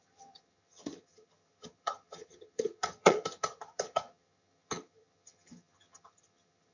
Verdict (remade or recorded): remade